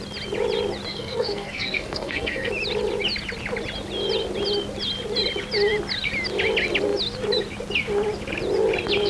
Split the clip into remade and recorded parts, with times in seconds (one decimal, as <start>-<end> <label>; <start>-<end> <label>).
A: 0.0-0.9 recorded; 0.9-2.5 remade; 2.5-9.1 recorded